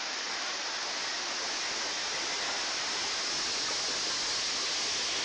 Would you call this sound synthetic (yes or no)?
no